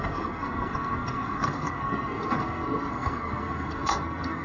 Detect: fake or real fake